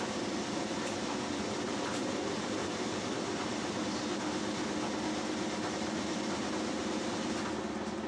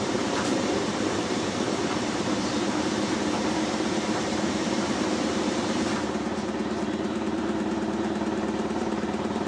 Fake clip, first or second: second